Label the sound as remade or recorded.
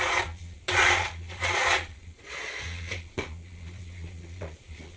remade